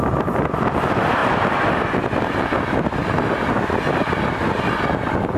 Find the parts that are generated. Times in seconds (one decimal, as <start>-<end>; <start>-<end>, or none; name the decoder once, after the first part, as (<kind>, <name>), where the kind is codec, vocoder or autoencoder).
none